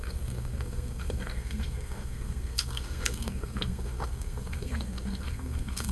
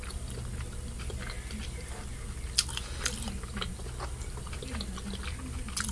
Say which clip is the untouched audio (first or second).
second